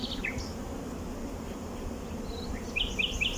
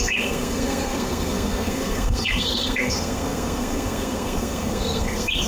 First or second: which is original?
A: first